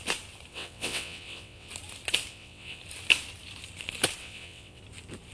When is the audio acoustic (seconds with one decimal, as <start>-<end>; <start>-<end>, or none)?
0.0-0.5; 1.7-2.3; 2.8-4.2; 4.8-5.3

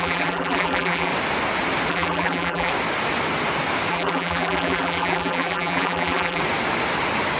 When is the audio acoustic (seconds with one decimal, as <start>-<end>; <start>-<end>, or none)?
1.1-1.9; 2.7-3.9; 6.4-7.4

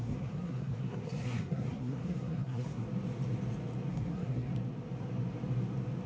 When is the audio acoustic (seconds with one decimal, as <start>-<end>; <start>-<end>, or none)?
2.8-3.9; 4.5-6.1

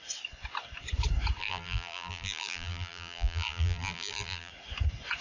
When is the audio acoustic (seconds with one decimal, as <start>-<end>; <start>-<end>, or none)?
0.0-1.4; 4.5-5.2

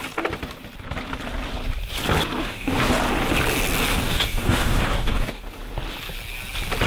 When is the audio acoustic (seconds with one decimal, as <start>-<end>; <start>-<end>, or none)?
0.0-2.4; 2.9-3.9; 5.4-6.9